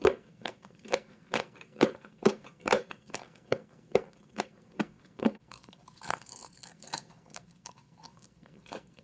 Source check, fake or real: fake